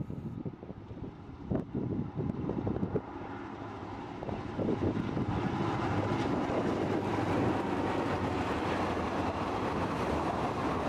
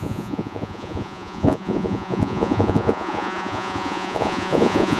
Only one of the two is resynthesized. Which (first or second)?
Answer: second